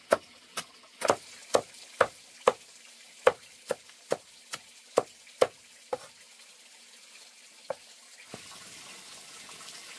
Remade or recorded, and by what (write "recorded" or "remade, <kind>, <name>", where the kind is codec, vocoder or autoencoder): recorded